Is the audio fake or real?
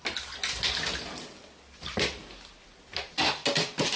real